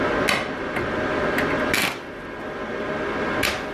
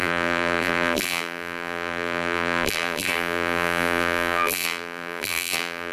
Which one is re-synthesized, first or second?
second